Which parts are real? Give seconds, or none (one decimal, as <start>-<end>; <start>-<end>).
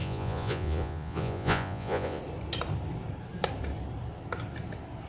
2.2-5.1